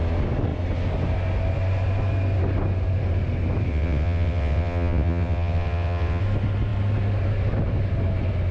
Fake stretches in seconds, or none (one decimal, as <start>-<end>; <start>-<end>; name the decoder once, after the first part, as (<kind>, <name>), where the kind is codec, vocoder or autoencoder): 3.7-6.2 (vocoder, WaveNeXt)